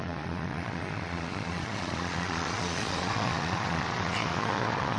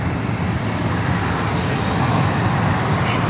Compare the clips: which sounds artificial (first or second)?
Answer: first